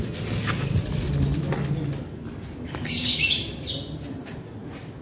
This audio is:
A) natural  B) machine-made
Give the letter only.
A